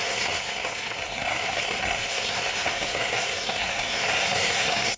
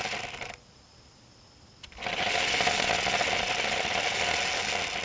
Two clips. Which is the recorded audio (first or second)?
second